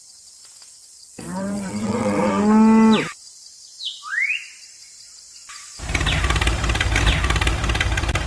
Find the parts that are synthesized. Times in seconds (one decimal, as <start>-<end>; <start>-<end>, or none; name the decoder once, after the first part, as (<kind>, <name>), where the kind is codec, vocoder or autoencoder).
0.8-2.3 (vocoder, WaveNeXt)